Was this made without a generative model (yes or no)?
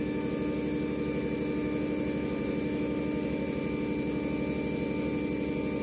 yes